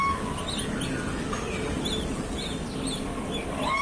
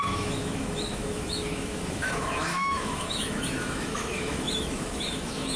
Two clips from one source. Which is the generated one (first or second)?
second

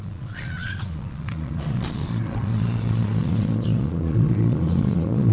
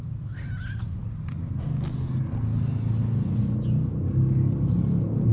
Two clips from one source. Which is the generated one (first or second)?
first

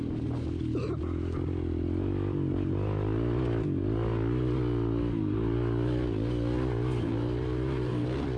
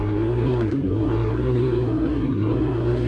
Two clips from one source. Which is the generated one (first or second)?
second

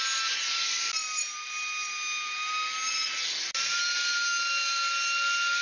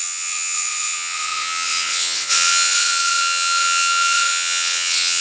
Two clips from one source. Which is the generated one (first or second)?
second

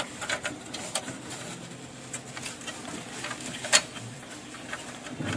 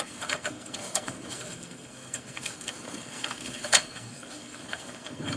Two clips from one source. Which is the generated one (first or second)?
second